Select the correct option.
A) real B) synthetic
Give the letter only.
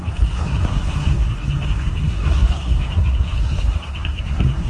B